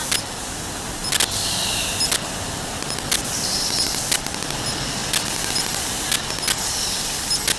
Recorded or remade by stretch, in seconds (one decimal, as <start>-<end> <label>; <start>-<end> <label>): 0.0-1.0 recorded; 1.0-1.9 remade; 1.9-7.6 recorded